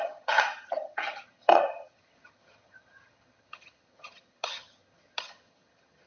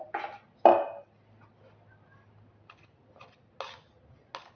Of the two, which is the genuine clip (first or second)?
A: second